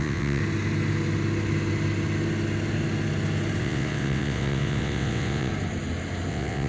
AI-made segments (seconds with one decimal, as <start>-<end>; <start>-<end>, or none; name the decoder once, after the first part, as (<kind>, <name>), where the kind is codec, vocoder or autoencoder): 0.0-0.4 (vocoder, WaveNeXt); 3.6-5.5; 6.3-6.7